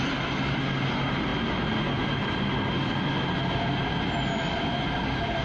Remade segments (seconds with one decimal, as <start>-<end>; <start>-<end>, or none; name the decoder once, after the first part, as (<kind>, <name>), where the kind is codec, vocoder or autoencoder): none